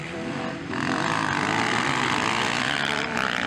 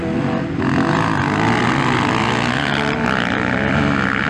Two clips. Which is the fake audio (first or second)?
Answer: first